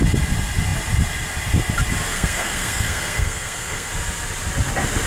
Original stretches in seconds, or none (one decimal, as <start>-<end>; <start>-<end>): 0.0-2.1; 3.9-5.1